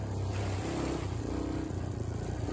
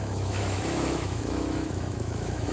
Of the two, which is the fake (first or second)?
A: second